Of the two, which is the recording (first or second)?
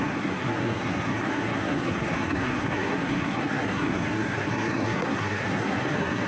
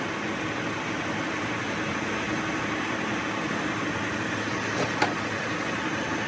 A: second